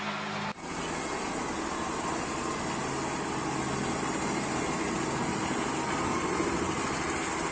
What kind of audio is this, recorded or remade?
recorded